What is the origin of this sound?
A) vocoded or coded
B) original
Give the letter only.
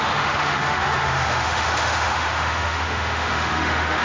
A